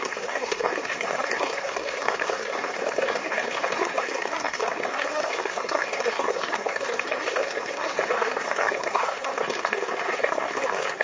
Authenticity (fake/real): fake